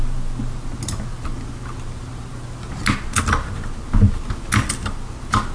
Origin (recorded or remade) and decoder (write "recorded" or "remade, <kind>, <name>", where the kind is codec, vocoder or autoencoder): recorded